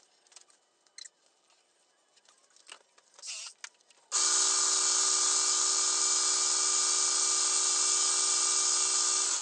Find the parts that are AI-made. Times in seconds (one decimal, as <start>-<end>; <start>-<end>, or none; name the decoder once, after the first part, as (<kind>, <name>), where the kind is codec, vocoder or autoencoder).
none